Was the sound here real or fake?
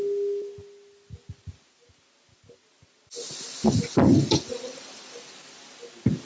real